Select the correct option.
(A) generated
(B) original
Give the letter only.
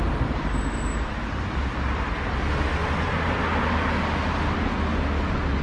B